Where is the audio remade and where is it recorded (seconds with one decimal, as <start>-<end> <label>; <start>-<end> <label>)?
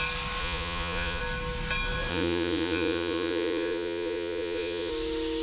0.0-0.4 recorded; 0.4-1.2 remade; 1.2-2.1 recorded; 2.1-4.9 remade; 4.9-5.4 recorded